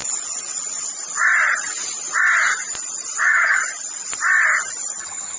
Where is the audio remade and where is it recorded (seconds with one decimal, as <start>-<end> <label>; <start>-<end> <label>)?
0.0-3.2 recorded; 3.2-3.6 remade; 3.6-5.0 recorded; 5.0-5.4 remade